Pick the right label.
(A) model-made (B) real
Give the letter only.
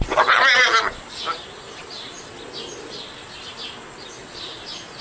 B